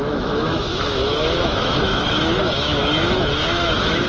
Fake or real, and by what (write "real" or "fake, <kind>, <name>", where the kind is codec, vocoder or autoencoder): fake, autoencoder, DAC-VAE